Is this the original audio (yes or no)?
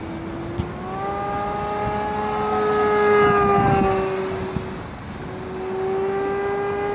yes